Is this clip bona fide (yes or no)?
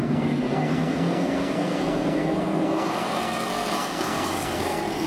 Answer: no